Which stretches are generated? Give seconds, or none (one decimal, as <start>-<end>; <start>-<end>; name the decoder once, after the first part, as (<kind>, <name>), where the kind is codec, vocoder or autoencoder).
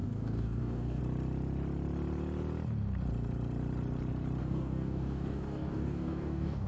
0.0-1.0 (codec, DAC); 4.4-6.7